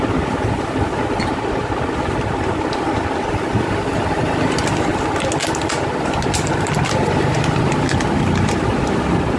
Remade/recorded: recorded